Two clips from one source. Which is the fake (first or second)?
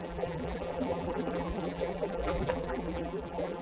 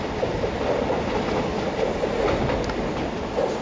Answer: first